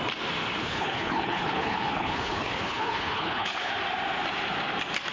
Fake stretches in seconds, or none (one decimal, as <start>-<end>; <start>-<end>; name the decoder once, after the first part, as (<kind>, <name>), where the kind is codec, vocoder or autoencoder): 0.6-3.7 (codec, HILCodec)